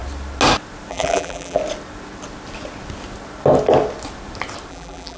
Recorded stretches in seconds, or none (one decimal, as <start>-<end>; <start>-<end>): 0.0-0.9; 1.6-4.7